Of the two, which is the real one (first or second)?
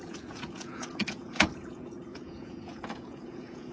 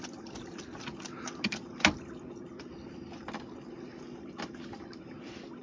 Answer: second